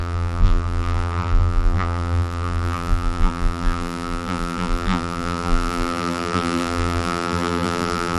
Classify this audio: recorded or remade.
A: remade